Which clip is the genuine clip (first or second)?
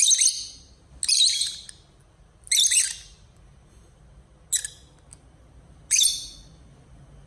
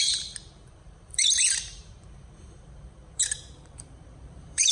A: first